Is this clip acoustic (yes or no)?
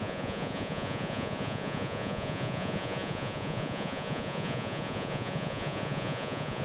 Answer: no